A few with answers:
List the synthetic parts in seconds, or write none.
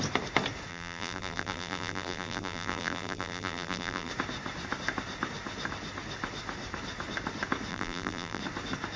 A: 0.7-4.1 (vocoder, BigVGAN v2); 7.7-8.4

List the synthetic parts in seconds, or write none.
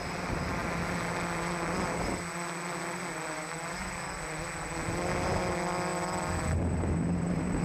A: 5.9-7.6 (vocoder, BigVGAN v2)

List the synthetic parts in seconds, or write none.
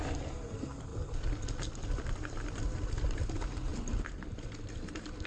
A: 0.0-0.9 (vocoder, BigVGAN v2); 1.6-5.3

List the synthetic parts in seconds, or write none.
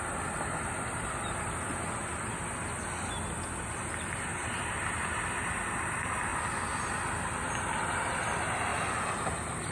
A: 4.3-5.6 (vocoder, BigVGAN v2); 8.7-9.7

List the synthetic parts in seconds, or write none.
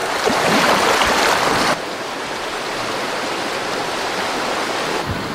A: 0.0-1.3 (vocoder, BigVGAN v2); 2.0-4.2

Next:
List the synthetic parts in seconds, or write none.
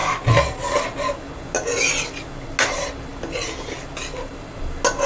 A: none